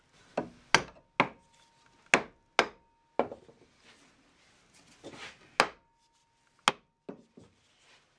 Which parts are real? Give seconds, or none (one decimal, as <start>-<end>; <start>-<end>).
0.0-8.2